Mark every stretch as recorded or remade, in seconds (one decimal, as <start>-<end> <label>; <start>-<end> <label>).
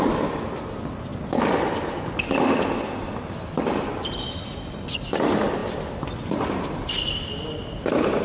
0.0-8.2 recorded